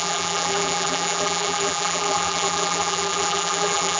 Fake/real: fake